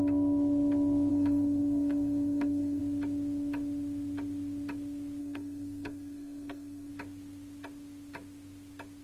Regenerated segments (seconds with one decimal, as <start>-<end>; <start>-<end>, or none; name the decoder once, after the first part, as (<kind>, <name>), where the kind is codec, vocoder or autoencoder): 1.1-2.8 (codec, SNAC); 5.2-6.9